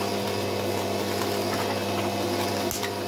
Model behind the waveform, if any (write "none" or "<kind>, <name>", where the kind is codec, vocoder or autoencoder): none